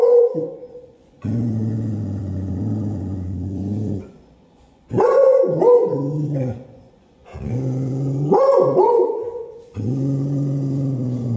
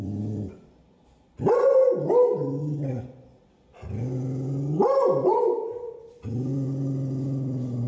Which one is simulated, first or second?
first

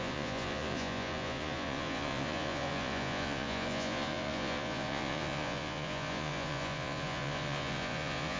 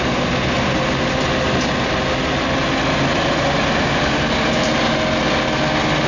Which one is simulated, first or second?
first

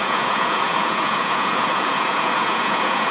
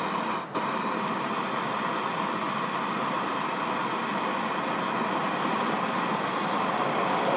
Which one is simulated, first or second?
first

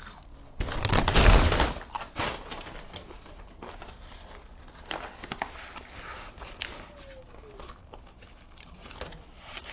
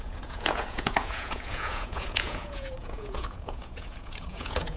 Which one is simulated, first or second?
second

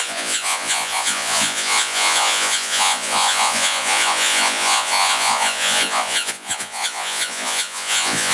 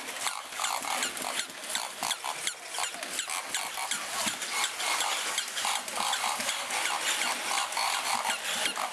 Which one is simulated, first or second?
first